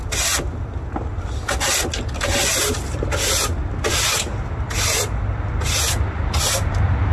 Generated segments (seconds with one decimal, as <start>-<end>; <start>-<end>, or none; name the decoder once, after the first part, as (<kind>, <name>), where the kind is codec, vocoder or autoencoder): none